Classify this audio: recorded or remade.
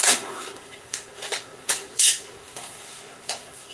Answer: remade